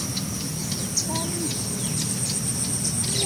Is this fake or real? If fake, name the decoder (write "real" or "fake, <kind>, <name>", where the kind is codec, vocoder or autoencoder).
real